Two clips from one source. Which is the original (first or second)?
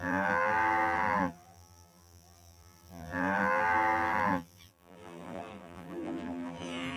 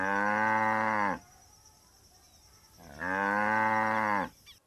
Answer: second